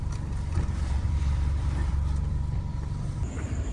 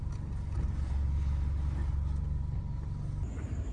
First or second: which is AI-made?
first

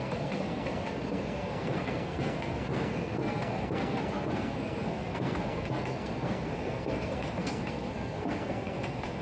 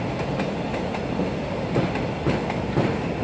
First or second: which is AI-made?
first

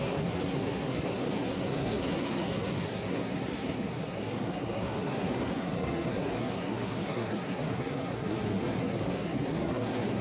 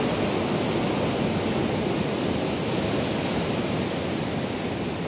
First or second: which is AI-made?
first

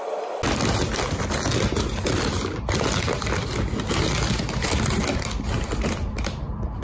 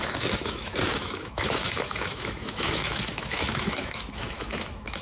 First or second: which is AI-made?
second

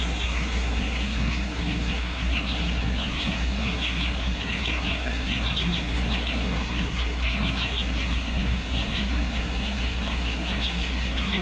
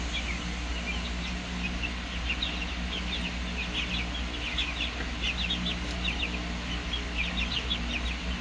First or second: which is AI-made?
first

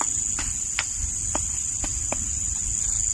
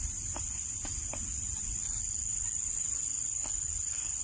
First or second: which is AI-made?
second